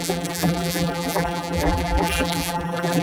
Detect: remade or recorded remade